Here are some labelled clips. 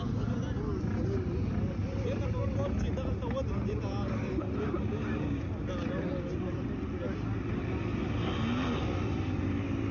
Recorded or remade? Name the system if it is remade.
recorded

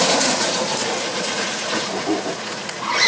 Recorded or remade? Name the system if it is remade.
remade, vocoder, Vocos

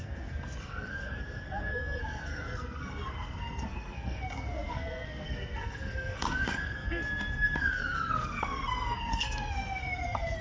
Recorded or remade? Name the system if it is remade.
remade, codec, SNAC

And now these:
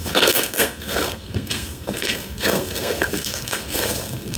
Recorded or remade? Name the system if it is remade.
remade, codec, SNAC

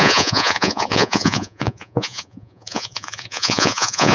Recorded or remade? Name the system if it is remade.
remade, vocoder, Vocos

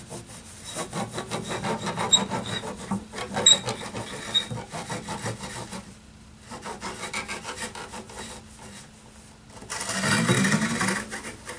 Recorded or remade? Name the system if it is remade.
recorded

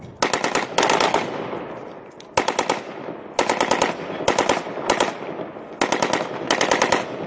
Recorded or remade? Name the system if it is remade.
recorded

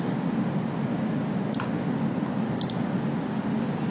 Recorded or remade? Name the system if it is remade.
recorded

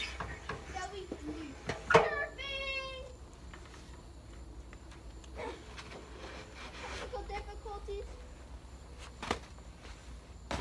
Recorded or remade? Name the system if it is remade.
recorded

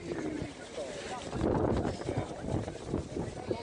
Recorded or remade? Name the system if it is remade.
recorded